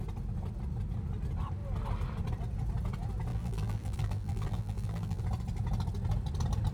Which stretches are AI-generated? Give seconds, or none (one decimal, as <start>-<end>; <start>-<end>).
3.3-5.2